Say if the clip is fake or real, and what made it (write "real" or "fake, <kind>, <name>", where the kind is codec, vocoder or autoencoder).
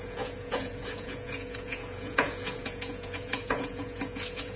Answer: fake, vocoder, Vocos